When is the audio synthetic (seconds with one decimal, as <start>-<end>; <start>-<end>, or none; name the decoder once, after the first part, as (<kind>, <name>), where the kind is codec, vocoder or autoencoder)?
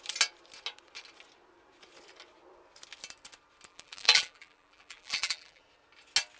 3.7-5.6 (vocoder, BigVGAN v2)